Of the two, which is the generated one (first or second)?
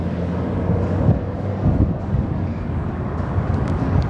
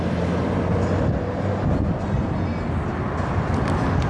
first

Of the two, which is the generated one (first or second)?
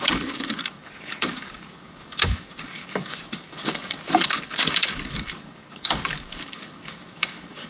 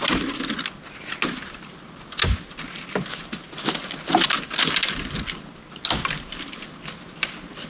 first